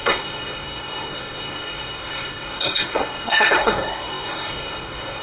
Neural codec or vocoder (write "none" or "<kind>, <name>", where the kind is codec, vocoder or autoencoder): codec, SNAC